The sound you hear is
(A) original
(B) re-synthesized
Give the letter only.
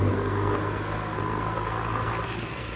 B